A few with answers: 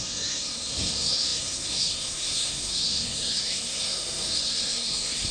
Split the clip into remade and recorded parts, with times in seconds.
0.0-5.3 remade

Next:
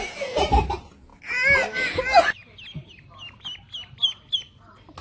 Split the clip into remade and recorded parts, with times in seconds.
0.0-5.0 recorded

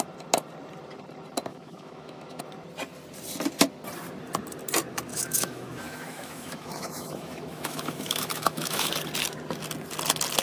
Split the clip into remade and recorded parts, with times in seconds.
0.0-1.5 recorded; 1.5-2.4 remade; 2.4-5.1 recorded; 5.1-8.9 remade; 8.9-10.4 recorded

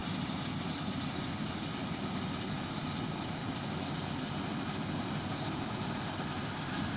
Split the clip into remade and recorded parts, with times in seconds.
0.0-7.0 recorded

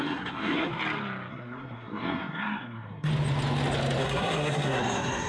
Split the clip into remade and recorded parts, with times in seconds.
0.0-0.7 remade; 0.7-1.3 recorded; 1.3-3.1 remade; 3.1-4.0 recorded; 4.0-5.3 remade

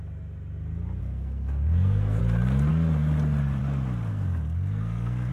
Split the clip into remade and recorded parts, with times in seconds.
0.0-1.0 recorded; 1.0-2.2 remade; 2.2-4.1 recorded; 4.1-5.3 remade

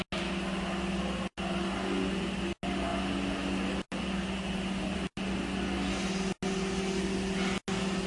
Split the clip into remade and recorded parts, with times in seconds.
0.0-8.1 recorded

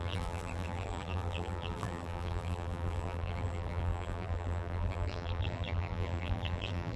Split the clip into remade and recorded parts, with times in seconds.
0.0-7.0 remade